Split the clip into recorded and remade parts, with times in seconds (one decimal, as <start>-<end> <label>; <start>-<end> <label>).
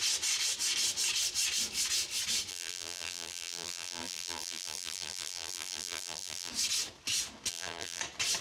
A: 0.0-2.5 recorded; 2.5-6.5 remade; 6.5-7.5 recorded; 7.5-8.0 remade; 8.0-8.4 recorded